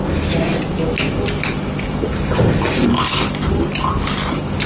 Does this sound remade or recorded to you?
recorded